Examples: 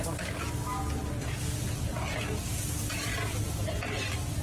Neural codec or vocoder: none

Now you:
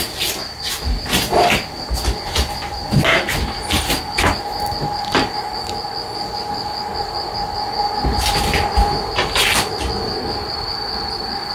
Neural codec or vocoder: none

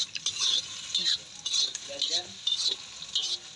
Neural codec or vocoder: none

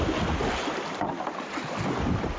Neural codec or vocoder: none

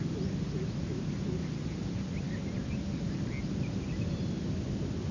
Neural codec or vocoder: none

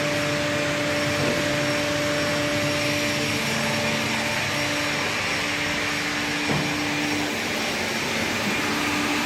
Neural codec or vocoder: none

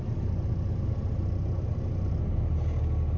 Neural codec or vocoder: none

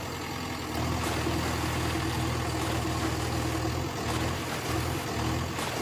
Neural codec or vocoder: none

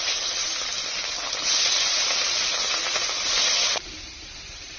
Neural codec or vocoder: vocoder, BigVGAN v2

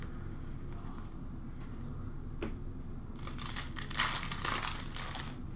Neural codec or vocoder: none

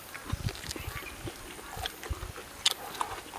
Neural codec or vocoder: none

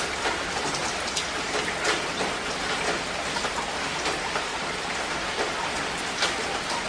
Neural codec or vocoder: none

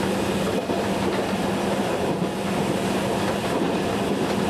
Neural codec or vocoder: none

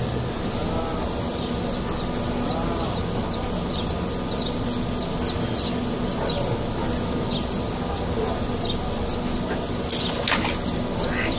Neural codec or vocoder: none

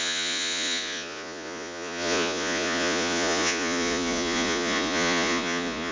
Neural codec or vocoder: vocoder, Vocos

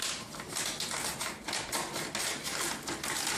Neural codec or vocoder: none